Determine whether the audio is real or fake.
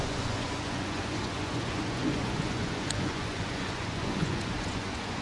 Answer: fake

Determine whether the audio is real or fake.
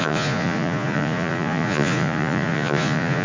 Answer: fake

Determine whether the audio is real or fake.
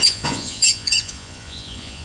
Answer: fake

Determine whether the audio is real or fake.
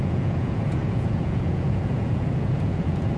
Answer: fake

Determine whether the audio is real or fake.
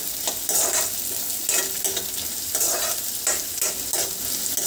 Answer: real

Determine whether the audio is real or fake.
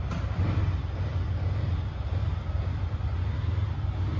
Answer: real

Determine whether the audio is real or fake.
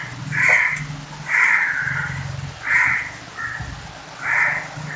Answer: real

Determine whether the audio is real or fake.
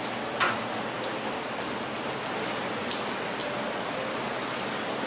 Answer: real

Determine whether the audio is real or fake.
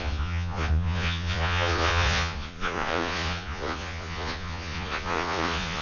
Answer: fake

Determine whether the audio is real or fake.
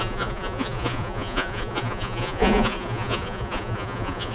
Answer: fake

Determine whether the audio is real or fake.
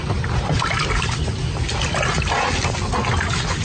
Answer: real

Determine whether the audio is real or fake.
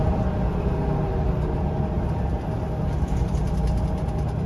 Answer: real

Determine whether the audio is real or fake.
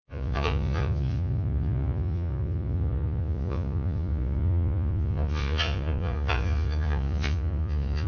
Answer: fake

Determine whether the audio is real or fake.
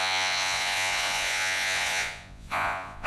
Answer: fake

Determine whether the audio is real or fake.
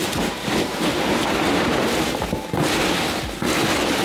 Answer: real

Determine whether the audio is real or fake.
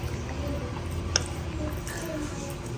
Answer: real